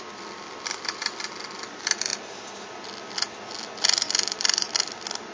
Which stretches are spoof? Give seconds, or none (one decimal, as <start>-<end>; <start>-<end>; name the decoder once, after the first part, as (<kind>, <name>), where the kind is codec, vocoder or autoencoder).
none